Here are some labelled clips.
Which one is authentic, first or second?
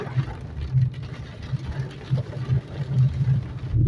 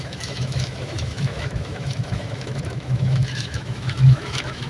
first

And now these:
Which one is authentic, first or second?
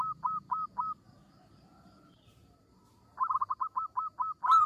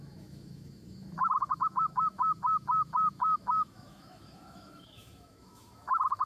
first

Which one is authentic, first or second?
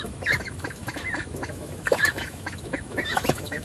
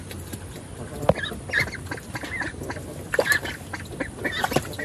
second